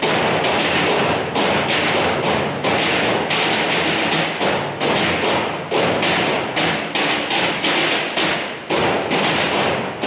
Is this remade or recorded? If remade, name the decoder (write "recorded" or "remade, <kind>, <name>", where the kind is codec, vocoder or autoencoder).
recorded